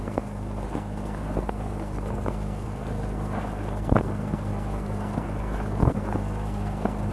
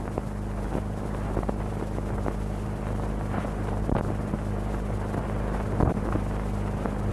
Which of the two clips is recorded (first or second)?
second